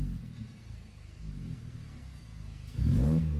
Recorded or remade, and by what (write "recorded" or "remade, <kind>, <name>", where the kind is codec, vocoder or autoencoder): remade, codec, SNAC